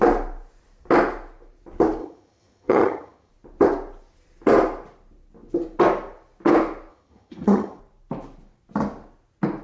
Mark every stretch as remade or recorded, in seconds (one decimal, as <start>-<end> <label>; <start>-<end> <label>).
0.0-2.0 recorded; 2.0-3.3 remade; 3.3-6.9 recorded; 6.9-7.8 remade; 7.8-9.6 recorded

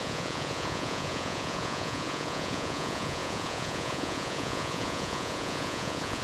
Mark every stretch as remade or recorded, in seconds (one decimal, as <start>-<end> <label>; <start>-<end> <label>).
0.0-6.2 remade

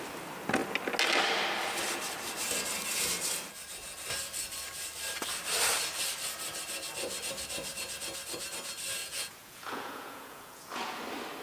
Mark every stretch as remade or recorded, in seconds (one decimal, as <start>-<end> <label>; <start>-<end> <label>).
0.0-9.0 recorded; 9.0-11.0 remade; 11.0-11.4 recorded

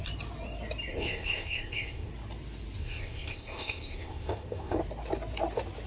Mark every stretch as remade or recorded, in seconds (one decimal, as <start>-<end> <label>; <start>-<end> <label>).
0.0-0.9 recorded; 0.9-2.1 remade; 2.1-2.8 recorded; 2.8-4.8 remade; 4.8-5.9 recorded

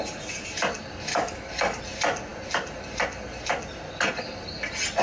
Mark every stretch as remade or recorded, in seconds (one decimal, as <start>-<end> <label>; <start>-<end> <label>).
0.0-1.1 recorded; 1.1-1.8 remade; 1.8-5.0 recorded